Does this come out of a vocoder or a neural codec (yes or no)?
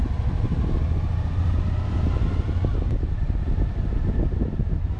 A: no